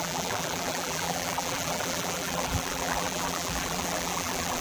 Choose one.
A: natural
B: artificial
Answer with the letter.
B